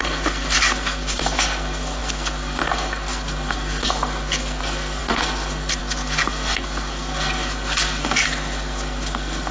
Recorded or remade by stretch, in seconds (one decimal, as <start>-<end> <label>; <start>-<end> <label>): 0.0-9.5 remade